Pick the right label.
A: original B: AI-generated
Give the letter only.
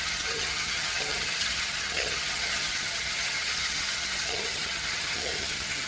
B